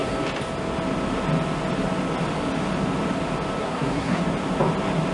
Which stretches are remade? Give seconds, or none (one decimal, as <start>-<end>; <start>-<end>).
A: 3.6-4.2